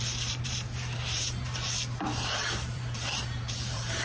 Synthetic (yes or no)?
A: yes